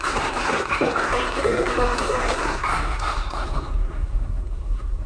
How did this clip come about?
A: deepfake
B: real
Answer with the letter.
A